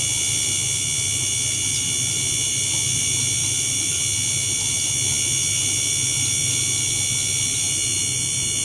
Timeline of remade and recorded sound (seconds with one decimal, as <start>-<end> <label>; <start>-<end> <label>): 0.0-3.4 recorded; 3.4-4.0 remade; 4.0-8.6 recorded